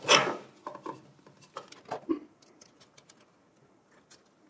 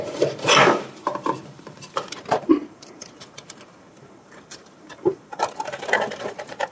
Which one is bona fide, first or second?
first